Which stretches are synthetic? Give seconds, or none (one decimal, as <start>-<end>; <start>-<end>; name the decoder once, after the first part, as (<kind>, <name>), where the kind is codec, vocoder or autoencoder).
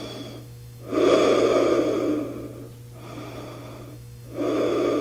0.0-0.9 (autoencoder, DAC-VAE); 3.9-5.0